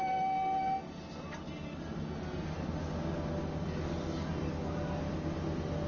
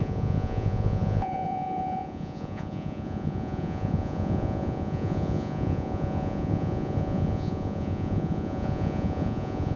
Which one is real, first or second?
first